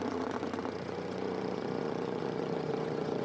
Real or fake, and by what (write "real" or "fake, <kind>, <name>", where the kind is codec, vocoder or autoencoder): fake, vocoder, Vocos